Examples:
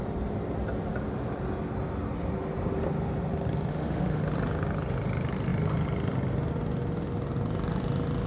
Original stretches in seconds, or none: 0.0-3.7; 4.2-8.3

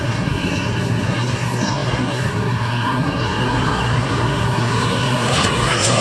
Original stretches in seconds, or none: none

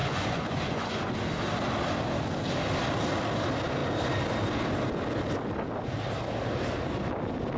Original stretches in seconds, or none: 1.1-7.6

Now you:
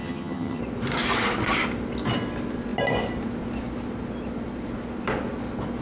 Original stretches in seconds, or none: 0.6-5.8